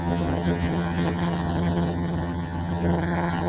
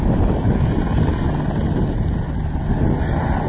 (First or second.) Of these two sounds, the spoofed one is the first